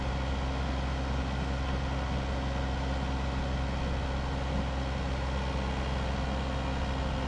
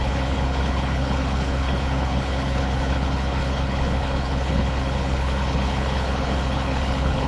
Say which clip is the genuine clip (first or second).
first